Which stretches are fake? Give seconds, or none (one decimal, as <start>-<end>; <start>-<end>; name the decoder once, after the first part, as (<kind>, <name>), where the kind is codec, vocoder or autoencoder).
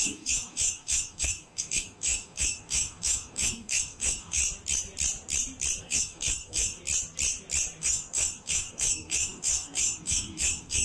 0.0-4.4 (codec, DAC); 5.8-6.8; 7.8-10.8